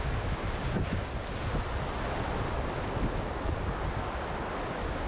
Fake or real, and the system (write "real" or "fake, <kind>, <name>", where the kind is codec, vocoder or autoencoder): real